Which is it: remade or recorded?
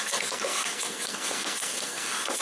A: remade